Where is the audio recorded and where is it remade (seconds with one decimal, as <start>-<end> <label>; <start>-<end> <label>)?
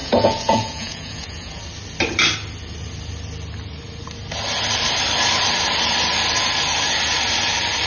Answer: 0.0-1.6 remade; 1.6-7.9 recorded